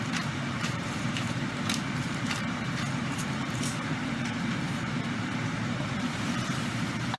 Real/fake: fake